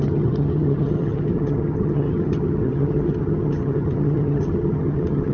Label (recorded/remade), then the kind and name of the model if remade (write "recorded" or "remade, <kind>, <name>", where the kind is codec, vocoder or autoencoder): remade, vocoder, HiFi-GAN